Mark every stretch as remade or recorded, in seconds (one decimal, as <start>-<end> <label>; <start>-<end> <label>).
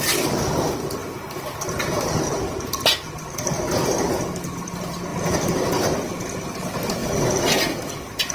0.0-8.3 recorded